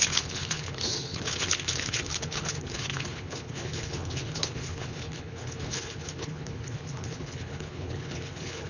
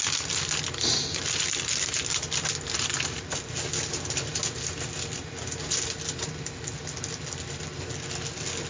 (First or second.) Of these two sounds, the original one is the second